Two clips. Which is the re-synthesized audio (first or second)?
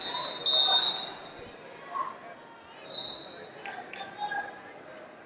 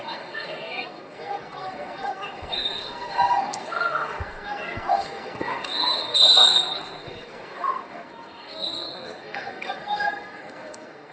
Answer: second